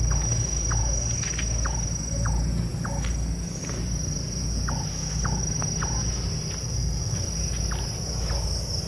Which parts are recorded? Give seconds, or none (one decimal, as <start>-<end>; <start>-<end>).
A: 0.0-6.6; 7.2-8.9